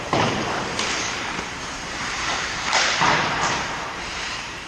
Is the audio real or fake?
fake